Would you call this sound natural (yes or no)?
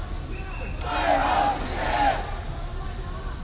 yes